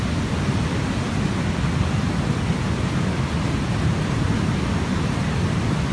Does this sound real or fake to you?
real